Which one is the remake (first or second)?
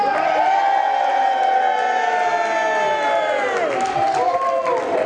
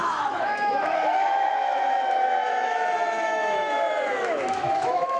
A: second